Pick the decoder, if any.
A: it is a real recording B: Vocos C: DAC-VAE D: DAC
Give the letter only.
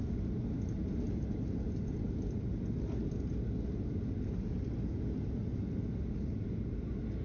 A